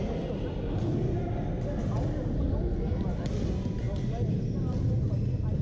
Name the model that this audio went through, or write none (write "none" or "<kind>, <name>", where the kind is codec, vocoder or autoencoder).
none